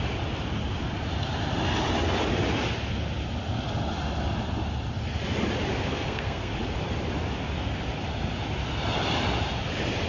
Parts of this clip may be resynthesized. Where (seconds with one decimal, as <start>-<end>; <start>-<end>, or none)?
5.9-6.5